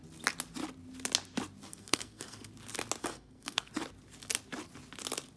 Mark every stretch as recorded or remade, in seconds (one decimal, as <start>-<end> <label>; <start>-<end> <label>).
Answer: 0.0-1.7 recorded; 1.7-2.5 remade; 2.5-3.0 recorded; 3.0-3.7 remade; 3.7-5.4 recorded